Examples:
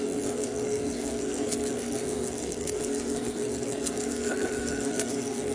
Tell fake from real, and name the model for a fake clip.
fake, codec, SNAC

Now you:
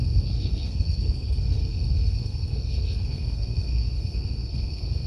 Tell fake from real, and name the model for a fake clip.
fake, codec, SNAC